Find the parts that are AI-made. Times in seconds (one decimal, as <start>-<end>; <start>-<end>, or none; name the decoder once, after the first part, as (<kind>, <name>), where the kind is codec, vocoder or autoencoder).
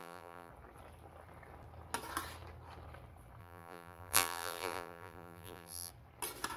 0.0-0.5 (vocoder, BigVGAN v2); 3.4-5.9